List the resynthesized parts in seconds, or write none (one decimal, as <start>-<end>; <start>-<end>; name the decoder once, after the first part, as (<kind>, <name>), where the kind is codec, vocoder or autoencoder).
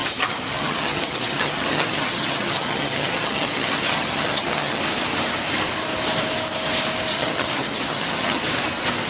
0.0-4.8 (vocoder, HiFi-GAN); 7.1-8.4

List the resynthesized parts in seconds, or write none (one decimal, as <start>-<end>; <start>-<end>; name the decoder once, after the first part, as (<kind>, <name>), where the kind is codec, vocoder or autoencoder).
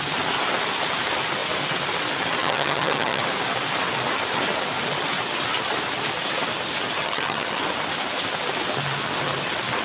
2.4-3.2 (vocoder, HiFi-GAN); 7.0-7.6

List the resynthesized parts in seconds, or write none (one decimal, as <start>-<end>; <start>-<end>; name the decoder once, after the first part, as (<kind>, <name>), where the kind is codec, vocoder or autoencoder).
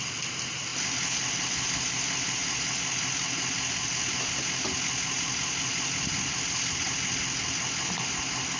none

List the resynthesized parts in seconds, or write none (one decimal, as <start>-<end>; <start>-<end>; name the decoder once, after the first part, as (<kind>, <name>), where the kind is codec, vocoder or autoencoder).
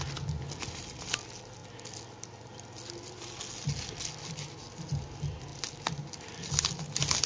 none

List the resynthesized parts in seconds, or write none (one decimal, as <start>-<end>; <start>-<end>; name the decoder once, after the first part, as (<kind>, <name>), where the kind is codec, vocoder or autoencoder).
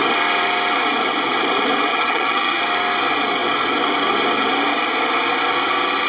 1.9-2.6 (vocoder, HiFi-GAN)